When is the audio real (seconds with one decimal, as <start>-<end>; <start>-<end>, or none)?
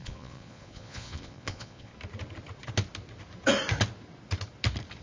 1.9-5.0